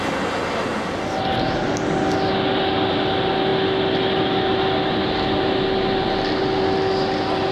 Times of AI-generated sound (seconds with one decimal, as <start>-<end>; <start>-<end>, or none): none